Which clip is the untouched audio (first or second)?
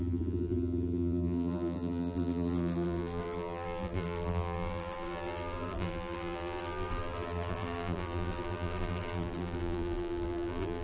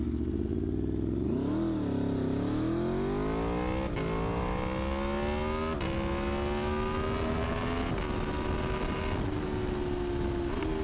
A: second